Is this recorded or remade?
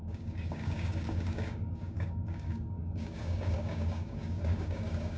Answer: remade